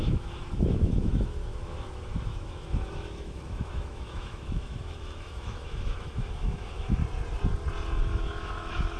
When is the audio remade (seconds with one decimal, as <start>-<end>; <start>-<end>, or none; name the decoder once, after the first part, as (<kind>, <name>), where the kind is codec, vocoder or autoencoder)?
0.0-7.0 (autoencoder, DAC-VAE); 8.0-9.0